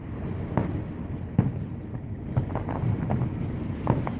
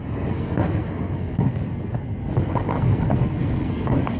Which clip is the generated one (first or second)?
second